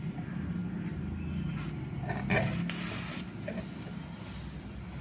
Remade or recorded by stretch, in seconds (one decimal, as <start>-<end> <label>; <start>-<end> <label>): 0.0-5.0 recorded